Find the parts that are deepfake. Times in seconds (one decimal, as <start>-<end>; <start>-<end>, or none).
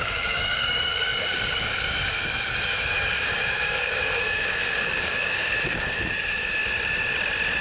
0.0-6.6